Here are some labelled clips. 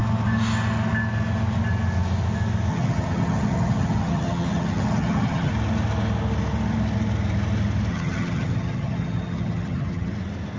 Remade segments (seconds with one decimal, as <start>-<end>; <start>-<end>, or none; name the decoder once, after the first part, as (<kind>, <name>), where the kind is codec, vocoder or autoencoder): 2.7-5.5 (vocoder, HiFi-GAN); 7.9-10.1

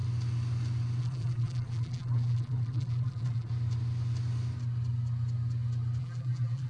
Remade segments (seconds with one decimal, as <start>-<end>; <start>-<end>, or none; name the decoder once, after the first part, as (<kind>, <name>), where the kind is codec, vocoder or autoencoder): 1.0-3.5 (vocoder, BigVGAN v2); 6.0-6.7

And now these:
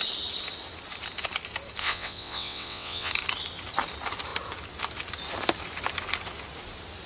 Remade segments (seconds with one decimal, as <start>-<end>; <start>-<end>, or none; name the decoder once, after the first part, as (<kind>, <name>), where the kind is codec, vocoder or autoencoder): 1.8-3.1 (vocoder, WaveNeXt)

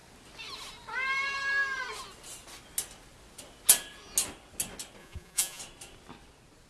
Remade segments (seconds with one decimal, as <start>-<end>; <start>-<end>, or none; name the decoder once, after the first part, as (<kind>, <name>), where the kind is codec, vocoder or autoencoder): 5.0-5.6 (vocoder, Vocos)